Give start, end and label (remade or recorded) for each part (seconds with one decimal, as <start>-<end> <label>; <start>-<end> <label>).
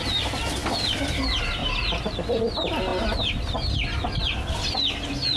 0.0-1.6 recorded; 1.6-2.4 remade; 2.4-5.4 recorded